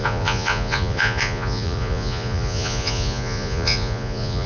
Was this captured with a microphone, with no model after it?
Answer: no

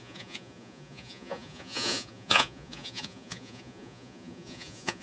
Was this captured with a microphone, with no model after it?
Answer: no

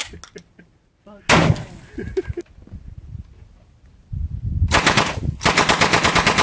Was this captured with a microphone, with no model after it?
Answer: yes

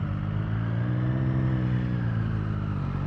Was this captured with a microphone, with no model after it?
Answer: yes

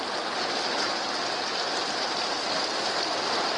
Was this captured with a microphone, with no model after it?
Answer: yes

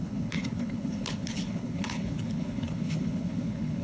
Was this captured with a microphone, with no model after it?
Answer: no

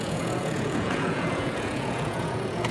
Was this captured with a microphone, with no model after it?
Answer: no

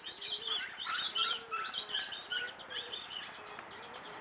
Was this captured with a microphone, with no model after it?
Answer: yes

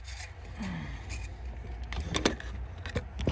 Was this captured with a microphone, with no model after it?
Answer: yes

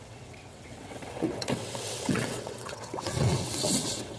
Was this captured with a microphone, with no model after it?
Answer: no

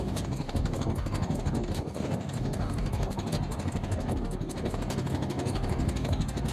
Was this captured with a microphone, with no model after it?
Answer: no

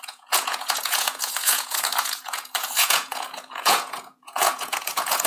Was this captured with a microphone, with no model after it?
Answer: no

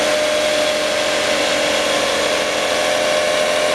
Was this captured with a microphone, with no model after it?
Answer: yes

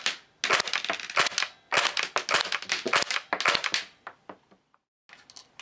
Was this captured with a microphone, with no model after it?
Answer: yes